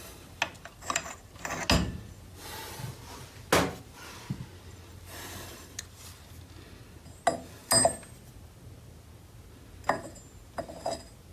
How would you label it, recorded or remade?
recorded